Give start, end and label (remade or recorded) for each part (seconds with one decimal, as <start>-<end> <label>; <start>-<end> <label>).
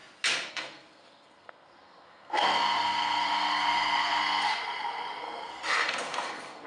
0.0-0.5 recorded; 0.5-4.2 remade; 4.2-5.2 recorded; 5.2-6.7 remade